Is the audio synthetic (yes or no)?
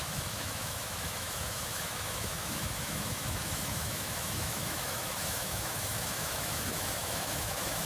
yes